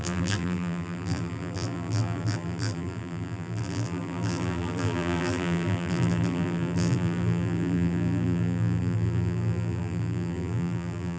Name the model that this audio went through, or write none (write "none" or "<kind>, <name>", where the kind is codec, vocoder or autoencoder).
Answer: vocoder, BigVGAN v2